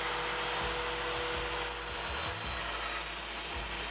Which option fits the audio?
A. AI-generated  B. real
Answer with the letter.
B